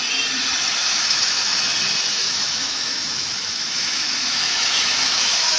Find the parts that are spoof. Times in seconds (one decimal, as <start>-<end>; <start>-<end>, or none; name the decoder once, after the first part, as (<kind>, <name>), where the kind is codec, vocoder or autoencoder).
0.8-1.6 (autoencoder, DAC-VAE); 2.1-5.6